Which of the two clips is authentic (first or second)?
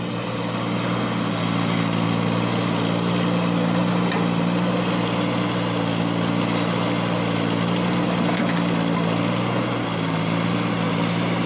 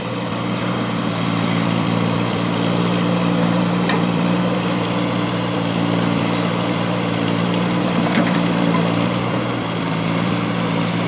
first